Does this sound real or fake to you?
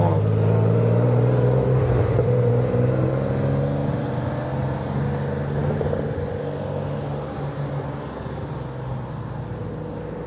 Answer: real